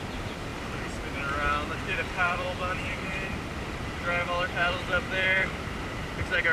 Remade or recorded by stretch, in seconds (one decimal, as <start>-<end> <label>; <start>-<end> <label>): 0.0-1.9 recorded; 1.9-5.7 remade; 5.7-6.5 recorded